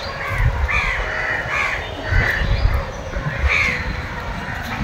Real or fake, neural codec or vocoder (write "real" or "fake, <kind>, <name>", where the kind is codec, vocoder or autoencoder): real